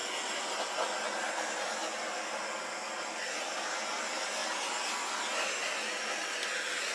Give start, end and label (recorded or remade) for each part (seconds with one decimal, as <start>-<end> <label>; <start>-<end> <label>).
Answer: 0.0-0.6 remade; 0.6-1.8 recorded; 1.8-3.5 remade; 3.5-4.4 recorded; 4.4-5.0 remade; 5.0-6.9 recorded